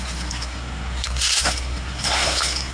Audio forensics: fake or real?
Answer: fake